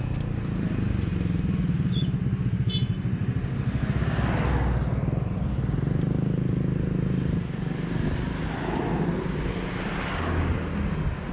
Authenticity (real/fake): real